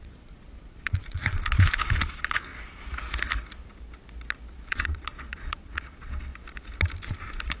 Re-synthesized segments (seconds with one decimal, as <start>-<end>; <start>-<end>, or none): 0.0-2.5; 4.5-6.3